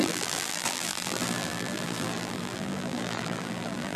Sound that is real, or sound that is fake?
fake